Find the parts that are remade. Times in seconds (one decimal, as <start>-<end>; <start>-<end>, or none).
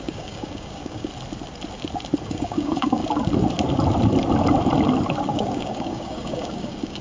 0.0-1.1; 2.2-3.0; 5.3-7.0